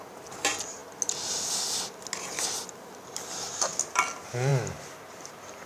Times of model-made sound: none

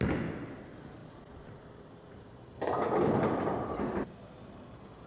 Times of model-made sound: 1.0-4.1 (vocoder, BigVGAN v2)

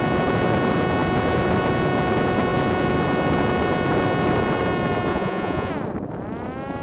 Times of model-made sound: 5.1-5.7 (vocoder, Vocos)

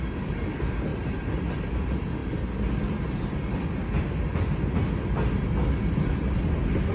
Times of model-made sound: none

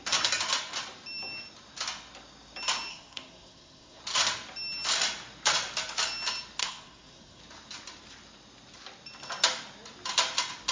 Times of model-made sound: 2.9-4.0 (codec, SNAC); 6.6-7.4